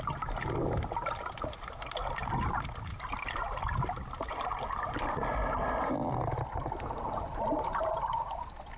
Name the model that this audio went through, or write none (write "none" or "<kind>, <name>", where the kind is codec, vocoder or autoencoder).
none